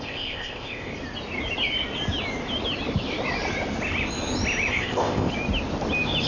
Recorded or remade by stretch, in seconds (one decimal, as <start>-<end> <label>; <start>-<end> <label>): 0.0-0.9 remade; 0.9-4.7 recorded; 4.7-5.3 remade; 5.3-6.3 recorded